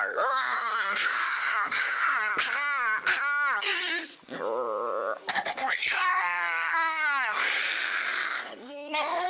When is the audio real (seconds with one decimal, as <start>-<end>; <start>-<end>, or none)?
2.3-3.6; 4.1-5.3; 7.6-8.4